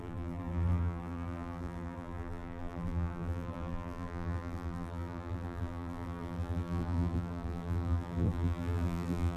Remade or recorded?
remade